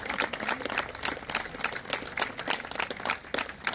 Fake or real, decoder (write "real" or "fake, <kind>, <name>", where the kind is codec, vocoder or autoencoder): real